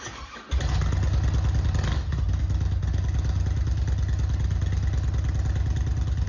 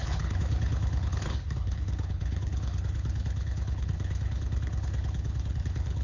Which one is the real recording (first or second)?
first